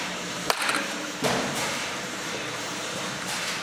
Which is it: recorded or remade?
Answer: remade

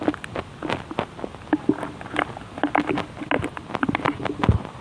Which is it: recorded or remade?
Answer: recorded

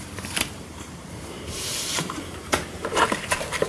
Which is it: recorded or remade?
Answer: remade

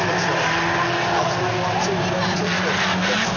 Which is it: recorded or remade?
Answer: recorded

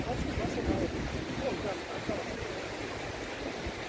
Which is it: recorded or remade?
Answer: remade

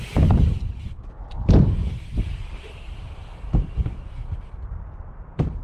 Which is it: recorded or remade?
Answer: remade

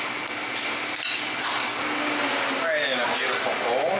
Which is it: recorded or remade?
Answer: remade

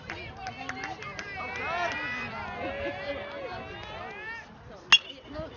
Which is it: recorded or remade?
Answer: recorded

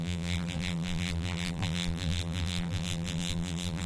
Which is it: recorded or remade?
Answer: remade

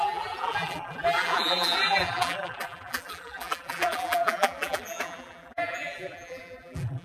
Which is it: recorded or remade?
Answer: remade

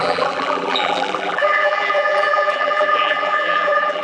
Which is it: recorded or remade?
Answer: remade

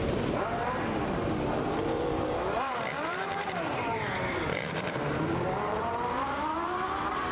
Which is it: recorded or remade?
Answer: remade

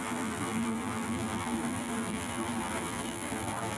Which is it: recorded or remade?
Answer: remade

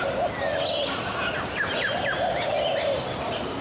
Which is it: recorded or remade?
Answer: recorded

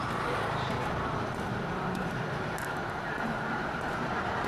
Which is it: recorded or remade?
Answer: remade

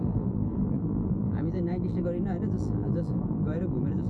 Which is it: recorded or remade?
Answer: remade